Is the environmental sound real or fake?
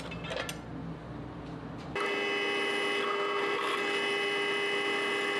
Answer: real